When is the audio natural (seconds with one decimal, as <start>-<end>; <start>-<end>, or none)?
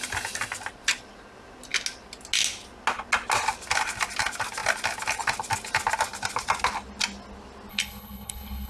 0.0-7.7